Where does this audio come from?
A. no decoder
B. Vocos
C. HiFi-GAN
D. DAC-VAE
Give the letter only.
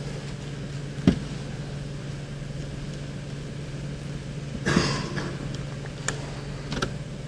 A